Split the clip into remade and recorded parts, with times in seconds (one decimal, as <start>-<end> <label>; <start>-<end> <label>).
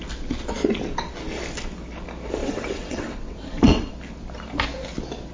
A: 0.0-2.4 recorded; 2.4-3.9 remade; 3.9-5.3 recorded